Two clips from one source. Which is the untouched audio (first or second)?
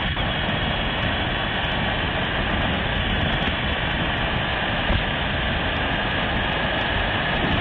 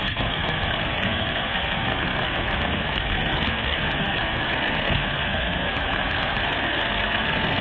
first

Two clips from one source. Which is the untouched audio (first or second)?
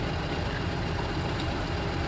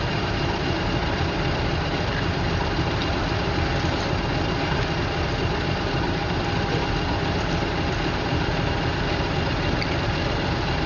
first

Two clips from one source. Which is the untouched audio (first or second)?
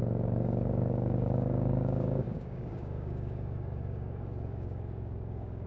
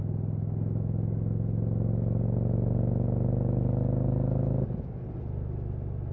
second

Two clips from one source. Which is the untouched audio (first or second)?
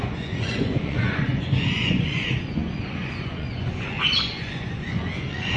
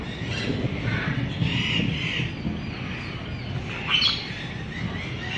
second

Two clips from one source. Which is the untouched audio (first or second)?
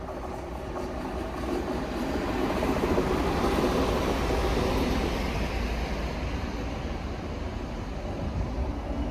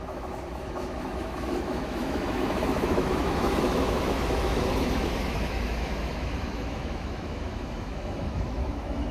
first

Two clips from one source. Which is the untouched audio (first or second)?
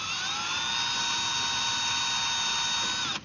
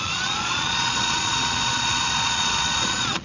first